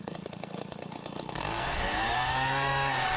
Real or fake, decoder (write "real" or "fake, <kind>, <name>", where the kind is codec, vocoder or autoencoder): fake, codec, SNAC